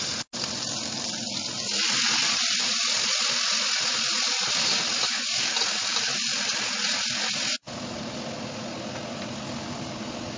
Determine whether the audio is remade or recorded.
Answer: recorded